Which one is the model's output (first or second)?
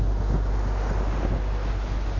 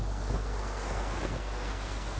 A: second